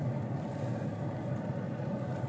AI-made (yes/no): no